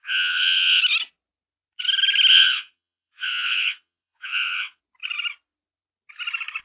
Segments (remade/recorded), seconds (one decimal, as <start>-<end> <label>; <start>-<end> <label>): 0.0-0.8 remade; 0.8-2.3 recorded; 2.3-4.8 remade; 4.8-6.6 recorded